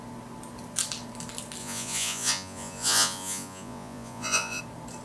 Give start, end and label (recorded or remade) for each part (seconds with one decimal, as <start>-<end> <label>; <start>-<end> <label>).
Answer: 0.0-1.6 recorded; 1.6-4.6 remade; 4.6-5.0 recorded